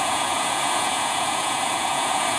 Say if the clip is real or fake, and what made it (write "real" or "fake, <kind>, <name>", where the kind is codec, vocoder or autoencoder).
fake, vocoder, Vocos